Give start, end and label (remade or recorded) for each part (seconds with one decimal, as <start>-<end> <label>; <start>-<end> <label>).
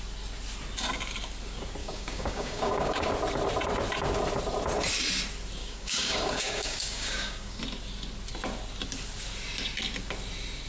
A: 0.0-1.8 recorded; 1.8-3.1 remade; 3.1-5.6 recorded; 5.6-7.6 remade; 7.6-10.7 recorded